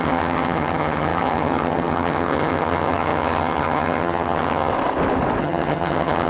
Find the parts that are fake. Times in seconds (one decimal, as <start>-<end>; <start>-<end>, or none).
0.0-4.7; 5.4-6.3